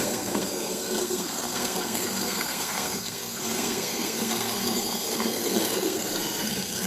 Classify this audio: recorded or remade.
remade